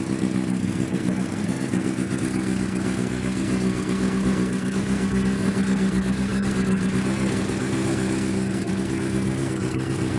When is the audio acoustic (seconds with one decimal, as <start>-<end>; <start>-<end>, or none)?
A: none